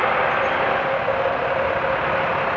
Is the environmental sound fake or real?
real